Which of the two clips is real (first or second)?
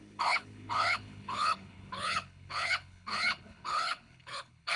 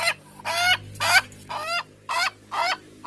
second